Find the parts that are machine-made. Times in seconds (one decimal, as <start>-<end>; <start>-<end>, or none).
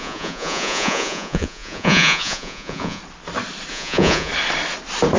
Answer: 0.0-3.0; 3.7-4.3